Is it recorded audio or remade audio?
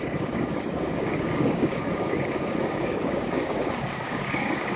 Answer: remade